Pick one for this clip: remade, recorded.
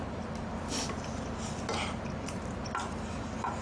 recorded